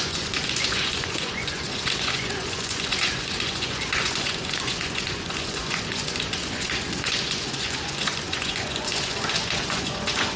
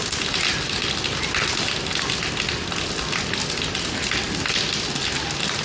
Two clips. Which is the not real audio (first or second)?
first